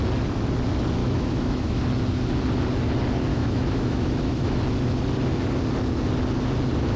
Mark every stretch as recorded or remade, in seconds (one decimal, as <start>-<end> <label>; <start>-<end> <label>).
0.0-1.0 recorded; 1.0-1.8 remade; 1.8-3.3 recorded; 3.3-4.6 remade; 4.6-7.0 recorded